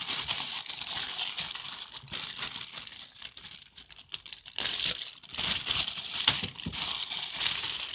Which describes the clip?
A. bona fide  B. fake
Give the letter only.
A